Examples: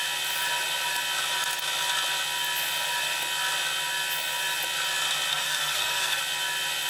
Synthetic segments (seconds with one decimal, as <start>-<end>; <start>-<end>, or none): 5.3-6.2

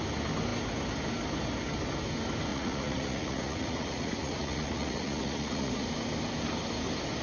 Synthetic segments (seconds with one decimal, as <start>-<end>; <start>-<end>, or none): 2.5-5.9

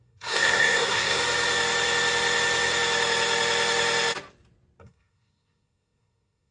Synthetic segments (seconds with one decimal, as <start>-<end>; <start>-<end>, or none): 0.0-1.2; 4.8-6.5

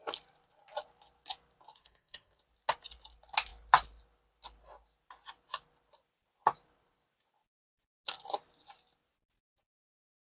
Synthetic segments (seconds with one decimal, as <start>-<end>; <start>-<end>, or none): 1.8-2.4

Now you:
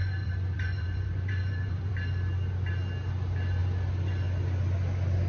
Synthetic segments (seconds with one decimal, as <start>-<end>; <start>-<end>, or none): 0.0-1.9

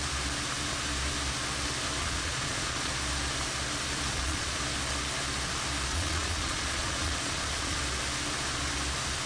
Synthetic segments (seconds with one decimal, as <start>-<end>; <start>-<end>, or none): 2.0-2.9; 4.1-4.6; 5.9-7.8